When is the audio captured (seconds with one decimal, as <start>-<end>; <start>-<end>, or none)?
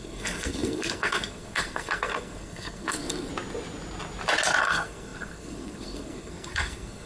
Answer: 3.3-4.6